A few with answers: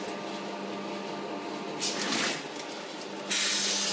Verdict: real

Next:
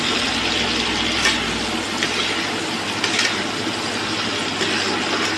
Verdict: real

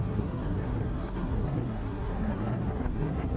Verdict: fake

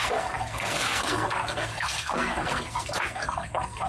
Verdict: fake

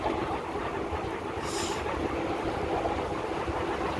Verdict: real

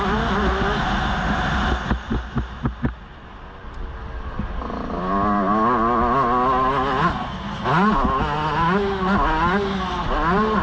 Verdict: real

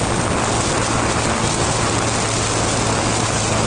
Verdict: real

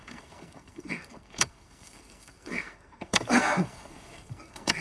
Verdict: fake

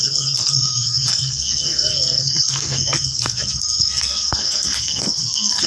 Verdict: fake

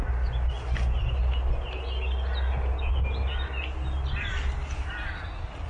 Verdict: real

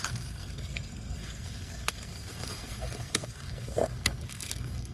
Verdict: fake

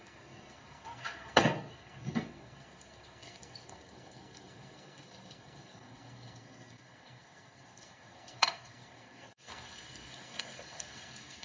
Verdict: fake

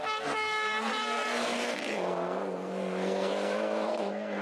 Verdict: fake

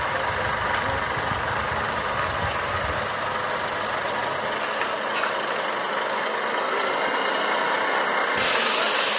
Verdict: real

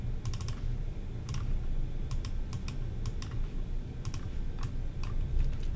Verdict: real